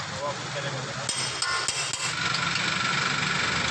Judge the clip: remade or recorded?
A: recorded